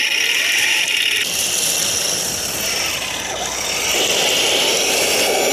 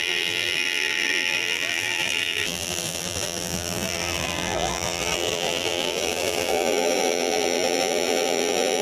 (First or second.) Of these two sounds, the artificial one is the second